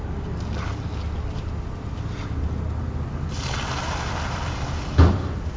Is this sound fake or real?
real